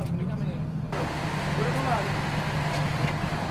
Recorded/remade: recorded